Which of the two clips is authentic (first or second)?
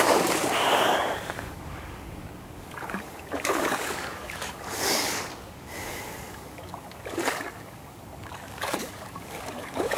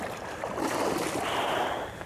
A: second